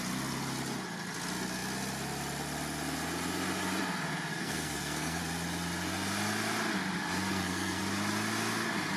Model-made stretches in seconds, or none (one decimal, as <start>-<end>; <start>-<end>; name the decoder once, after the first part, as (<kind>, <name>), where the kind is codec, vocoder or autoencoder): 4.3-5.2 (codec, SNAC); 7.3-7.8